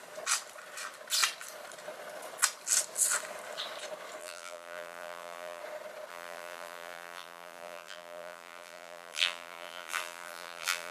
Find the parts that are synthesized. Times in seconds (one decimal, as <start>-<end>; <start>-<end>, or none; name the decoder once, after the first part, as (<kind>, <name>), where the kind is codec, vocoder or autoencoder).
4.2-5.6 (vocoder, BigVGAN v2); 6.1-10.9